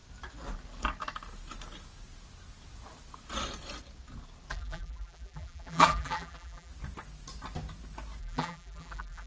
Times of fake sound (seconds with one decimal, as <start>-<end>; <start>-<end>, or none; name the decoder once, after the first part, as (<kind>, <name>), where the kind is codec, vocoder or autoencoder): 4.5-6.7 (vocoder, BigVGAN v2); 8.2-9.3